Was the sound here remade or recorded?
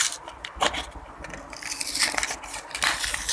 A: recorded